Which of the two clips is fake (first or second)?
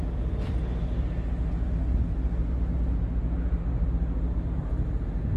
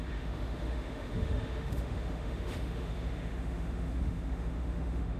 second